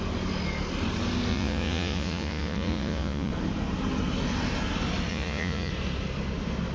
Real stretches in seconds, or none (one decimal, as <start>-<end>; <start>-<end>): 0.0-1.3; 3.3-5.1; 5.7-6.7